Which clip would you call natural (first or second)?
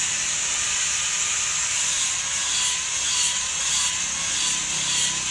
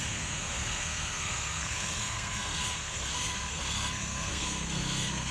first